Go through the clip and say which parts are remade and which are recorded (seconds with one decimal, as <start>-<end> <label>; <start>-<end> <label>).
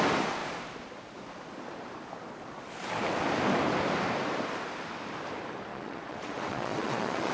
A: 0.0-5.7 recorded; 5.7-7.3 remade